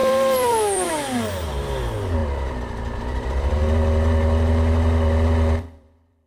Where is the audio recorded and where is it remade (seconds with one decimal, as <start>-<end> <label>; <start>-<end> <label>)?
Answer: 0.0-2.2 remade; 2.2-5.6 recorded; 5.6-6.3 remade